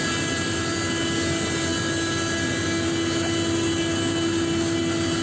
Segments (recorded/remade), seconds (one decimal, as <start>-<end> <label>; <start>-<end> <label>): 0.0-5.2 recorded